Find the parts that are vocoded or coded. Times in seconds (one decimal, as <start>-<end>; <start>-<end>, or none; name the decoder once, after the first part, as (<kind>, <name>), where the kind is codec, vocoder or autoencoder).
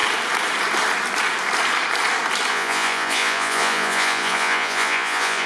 2.5-5.5 (vocoder, Vocos)